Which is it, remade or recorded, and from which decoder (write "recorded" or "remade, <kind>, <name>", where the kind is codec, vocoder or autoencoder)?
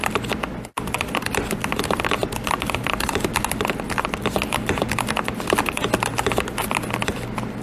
recorded